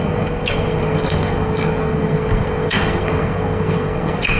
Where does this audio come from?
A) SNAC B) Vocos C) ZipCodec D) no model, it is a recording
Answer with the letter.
A